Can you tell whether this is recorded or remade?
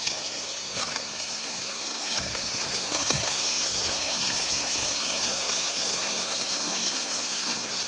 remade